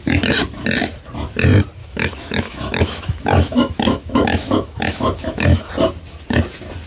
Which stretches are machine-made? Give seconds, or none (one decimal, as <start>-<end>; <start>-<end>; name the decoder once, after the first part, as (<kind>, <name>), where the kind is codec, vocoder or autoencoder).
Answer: 1.8-5.7 (autoencoder, DAC-VAE)